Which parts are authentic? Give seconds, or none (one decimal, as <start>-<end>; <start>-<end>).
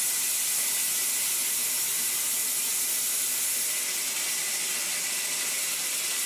0.0-6.3